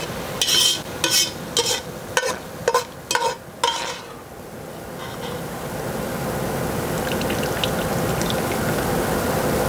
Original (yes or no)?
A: yes